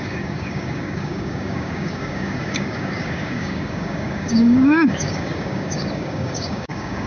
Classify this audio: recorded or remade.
remade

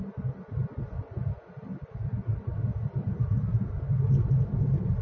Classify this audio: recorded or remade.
recorded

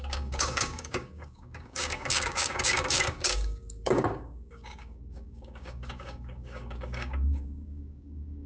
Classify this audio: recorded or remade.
remade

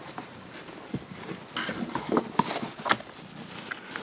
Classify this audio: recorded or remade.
recorded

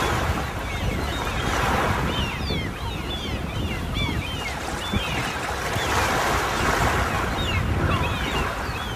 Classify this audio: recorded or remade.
recorded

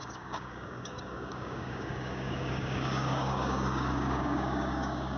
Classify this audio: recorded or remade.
remade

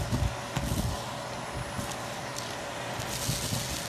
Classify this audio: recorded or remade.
recorded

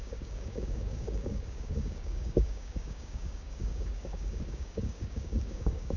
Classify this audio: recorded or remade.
remade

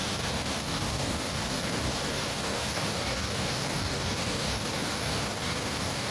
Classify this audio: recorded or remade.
remade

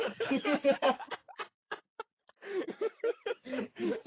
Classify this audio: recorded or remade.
remade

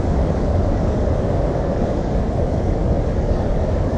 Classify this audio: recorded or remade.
remade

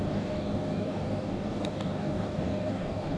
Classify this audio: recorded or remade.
remade